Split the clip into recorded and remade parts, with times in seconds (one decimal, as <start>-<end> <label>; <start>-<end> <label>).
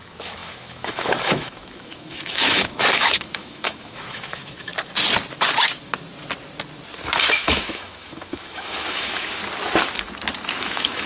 0.0-4.7 remade; 4.7-7.3 recorded; 7.3-9.4 remade; 9.4-10.6 recorded; 10.6-11.1 remade